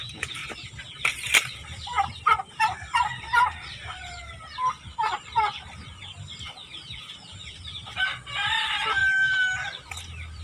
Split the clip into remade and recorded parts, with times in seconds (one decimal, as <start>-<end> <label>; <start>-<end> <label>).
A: 0.0-10.4 remade